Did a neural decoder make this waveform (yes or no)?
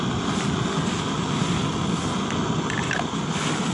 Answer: no